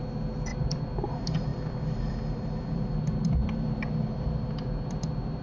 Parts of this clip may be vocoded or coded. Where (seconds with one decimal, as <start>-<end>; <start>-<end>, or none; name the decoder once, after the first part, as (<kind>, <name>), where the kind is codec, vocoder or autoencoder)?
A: 0.5-1.1 (vocoder, BigVGAN v2); 1.5-4.7